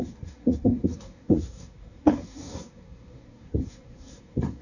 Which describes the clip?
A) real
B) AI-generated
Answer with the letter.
B